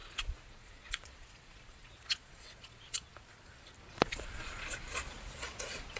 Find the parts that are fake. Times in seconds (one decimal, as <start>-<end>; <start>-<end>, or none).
0.0-3.1; 3.9-6.0